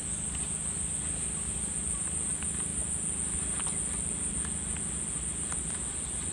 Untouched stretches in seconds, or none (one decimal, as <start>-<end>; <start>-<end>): 0.0-6.3